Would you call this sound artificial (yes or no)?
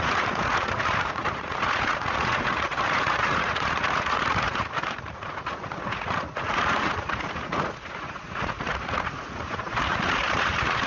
yes